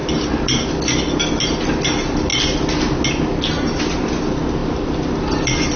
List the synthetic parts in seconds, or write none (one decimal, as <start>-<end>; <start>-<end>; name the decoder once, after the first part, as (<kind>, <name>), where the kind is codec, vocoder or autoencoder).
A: 0.0-0.7 (vocoder, BigVGAN v2); 4.6-5.8